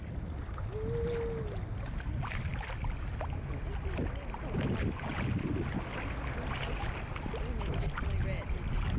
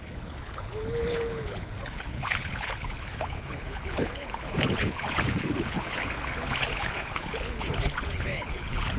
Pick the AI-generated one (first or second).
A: second